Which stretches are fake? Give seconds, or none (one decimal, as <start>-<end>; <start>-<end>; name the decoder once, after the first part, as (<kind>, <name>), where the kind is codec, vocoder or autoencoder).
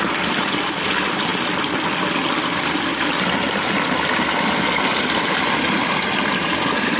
none